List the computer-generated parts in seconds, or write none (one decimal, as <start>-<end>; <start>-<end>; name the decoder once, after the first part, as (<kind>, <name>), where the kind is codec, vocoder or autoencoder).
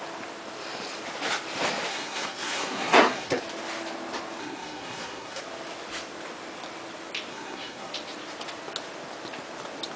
1.9-3.4 (codec, SNAC); 4.4-5.4; 7.3-7.9